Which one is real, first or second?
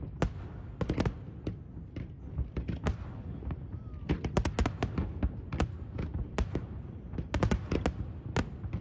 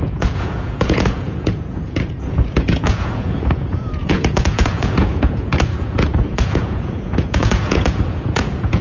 first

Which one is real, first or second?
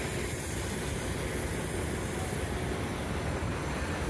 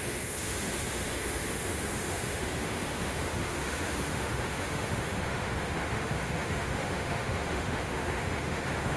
first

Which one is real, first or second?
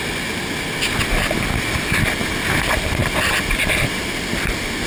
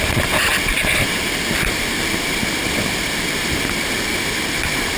first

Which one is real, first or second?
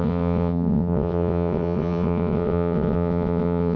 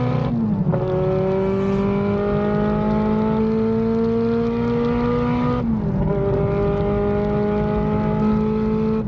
second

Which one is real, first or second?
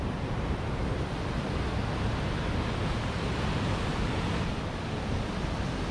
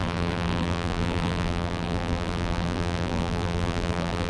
first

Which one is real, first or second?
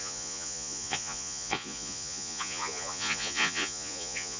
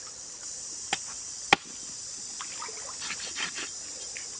second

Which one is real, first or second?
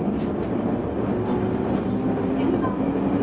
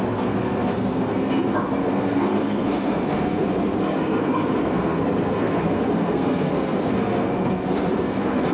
first